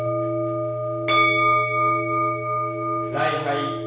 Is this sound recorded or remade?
recorded